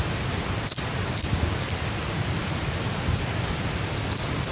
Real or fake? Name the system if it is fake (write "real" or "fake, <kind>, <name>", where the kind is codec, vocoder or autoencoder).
real